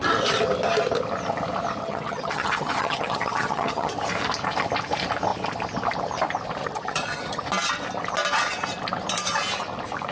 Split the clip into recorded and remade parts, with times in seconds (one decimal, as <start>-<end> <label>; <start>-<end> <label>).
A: 0.0-1.8 recorded; 1.8-3.9 remade; 3.9-6.6 recorded; 6.6-7.4 remade; 7.4-10.1 recorded